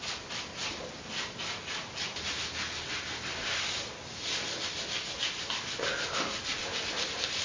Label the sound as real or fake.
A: real